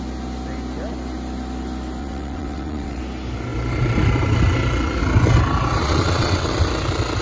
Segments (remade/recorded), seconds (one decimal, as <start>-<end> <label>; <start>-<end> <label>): 0.0-2.0 recorded; 2.0-3.0 remade; 3.0-5.8 recorded; 5.8-6.5 remade; 6.5-7.2 recorded